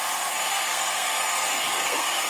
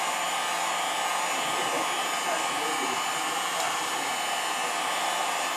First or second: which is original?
second